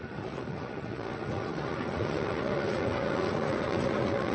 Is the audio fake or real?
fake